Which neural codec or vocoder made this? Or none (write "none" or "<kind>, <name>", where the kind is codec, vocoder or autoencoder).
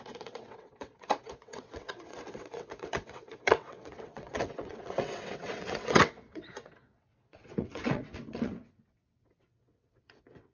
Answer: vocoder, WaveNeXt